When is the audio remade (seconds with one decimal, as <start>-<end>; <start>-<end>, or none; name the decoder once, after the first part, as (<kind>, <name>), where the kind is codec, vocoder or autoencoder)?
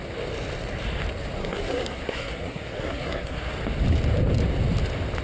1.4-3.5 (codec, SNAC)